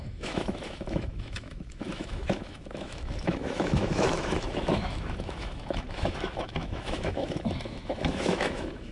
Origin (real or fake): fake